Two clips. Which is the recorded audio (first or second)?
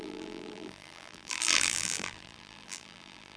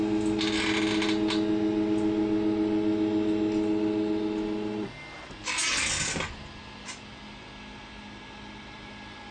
second